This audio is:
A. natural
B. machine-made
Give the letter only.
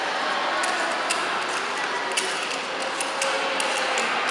A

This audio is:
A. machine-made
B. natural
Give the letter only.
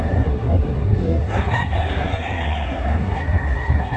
A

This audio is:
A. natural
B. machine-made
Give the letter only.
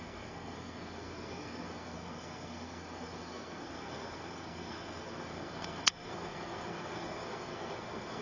B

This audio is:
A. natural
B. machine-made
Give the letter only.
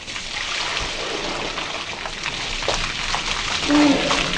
A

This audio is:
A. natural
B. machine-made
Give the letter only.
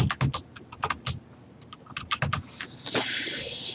A